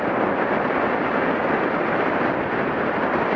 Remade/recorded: remade